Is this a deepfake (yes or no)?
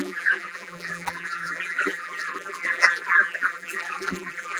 yes